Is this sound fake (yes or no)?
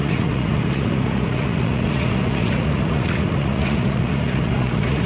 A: yes